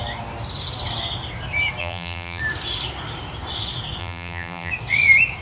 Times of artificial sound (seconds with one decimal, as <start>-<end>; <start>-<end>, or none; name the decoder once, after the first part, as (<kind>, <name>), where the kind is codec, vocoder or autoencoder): 1.8-2.4 (vocoder, BigVGAN v2); 4.0-4.7